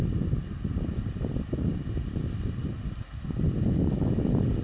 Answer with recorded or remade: recorded